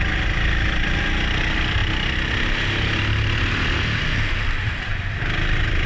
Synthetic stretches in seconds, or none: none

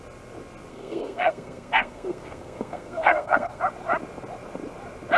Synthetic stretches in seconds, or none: 0.7-3.6

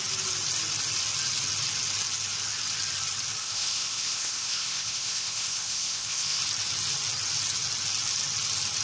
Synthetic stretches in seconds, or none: 3.4-6.4

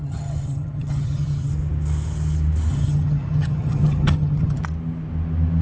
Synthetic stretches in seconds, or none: 0.0-1.5; 2.7-4.6

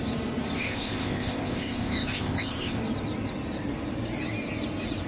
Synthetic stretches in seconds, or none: 0.6-2.8

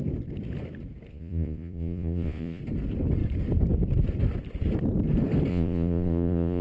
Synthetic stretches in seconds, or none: 1.1-2.6; 5.5-6.6